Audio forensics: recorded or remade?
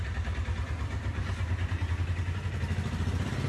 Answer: recorded